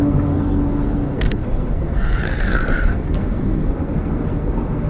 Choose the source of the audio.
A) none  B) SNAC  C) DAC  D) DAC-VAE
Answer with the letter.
B